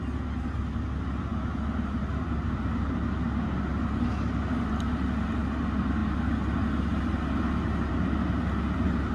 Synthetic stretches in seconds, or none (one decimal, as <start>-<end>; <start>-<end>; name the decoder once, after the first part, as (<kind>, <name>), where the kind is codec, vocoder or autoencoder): none

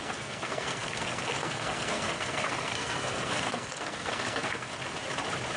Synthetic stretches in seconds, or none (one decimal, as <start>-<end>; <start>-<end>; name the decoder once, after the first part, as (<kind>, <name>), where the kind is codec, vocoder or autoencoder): 0.0-4.7 (codec, SNAC)

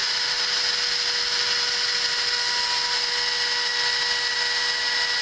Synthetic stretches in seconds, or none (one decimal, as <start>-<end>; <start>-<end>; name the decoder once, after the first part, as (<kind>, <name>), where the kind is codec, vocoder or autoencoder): none

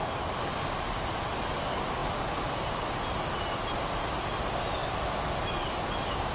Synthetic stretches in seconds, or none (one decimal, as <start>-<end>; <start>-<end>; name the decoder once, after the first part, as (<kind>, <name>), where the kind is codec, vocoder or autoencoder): none